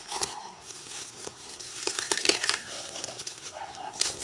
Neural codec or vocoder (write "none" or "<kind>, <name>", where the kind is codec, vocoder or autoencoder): codec, SNAC